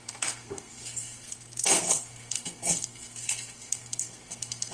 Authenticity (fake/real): fake